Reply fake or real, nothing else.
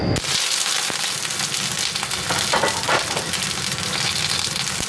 real